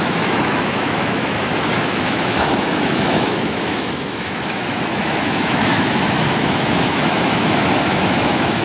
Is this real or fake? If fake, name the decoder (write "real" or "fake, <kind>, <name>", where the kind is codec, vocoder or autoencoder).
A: fake, autoencoder, DAC-VAE